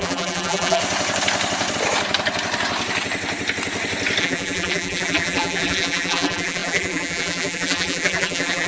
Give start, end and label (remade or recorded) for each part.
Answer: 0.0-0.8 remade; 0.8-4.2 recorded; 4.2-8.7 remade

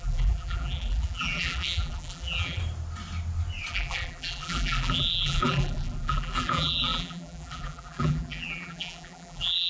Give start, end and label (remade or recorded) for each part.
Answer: 0.0-2.6 remade; 2.6-3.7 recorded; 3.7-9.7 remade

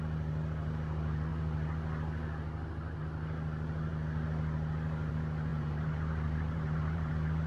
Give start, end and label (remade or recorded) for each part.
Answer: 0.0-5.5 recorded; 5.5-7.1 remade; 7.1-7.5 recorded

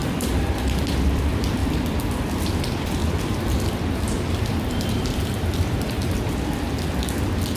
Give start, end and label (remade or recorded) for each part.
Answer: 0.0-1.2 remade; 1.2-1.6 recorded; 1.6-6.2 remade; 6.2-7.6 recorded

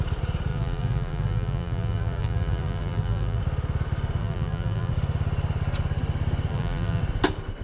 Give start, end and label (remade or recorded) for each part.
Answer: 0.0-0.5 recorded; 0.5-3.4 remade; 3.4-4.2 recorded; 4.2-4.9 remade; 4.9-6.5 recorded; 6.5-7.0 remade; 7.0-7.6 recorded

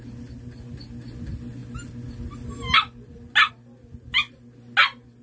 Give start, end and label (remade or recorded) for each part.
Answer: 0.0-5.2 recorded

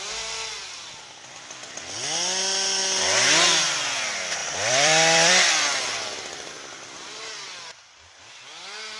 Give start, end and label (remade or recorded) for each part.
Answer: 0.0-4.4 recorded; 4.4-6.5 remade; 6.5-9.0 recorded

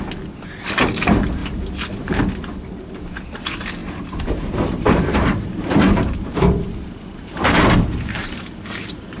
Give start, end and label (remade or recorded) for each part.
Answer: 0.0-1.4 recorded; 1.4-2.2 remade; 2.2-3.8 recorded; 3.8-9.2 remade